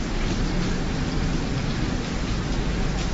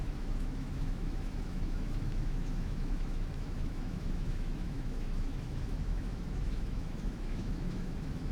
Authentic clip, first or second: first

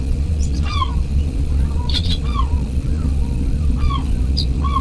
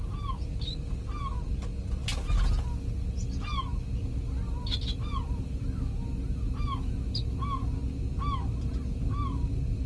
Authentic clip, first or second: second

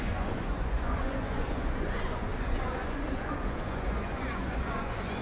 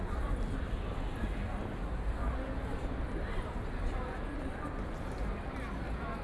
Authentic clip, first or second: second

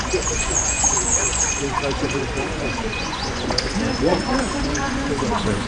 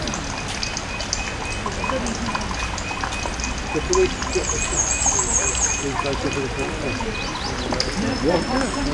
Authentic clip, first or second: second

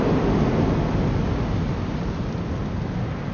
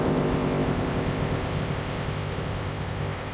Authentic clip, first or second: first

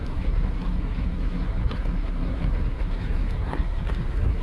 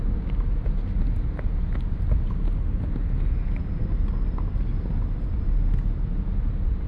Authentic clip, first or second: second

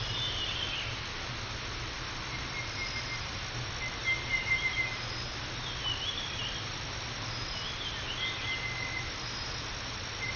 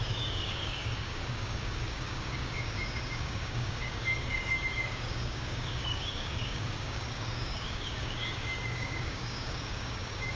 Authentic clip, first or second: first